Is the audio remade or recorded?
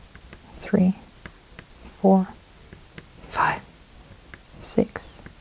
recorded